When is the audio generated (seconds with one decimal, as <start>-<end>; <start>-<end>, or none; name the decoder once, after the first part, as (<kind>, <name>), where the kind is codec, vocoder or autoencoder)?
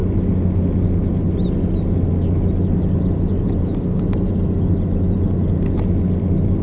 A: none